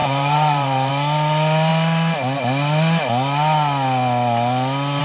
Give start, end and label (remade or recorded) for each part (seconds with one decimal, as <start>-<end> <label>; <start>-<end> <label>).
0.0-0.9 remade; 0.9-5.0 recorded